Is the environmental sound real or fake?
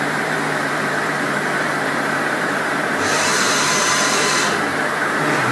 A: fake